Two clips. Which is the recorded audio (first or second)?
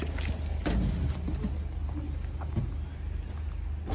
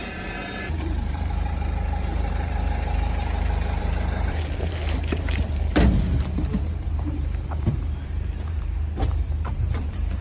first